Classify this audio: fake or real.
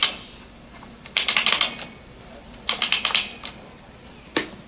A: real